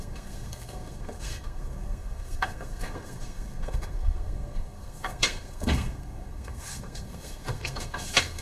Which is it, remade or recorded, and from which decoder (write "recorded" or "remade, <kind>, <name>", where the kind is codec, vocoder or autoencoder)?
remade, codec, SNAC